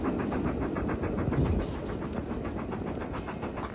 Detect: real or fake real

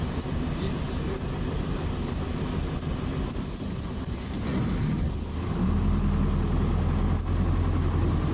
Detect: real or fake real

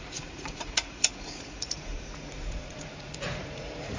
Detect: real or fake fake